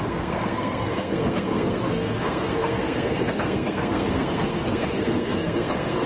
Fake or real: fake